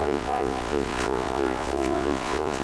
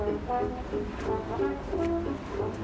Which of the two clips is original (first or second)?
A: second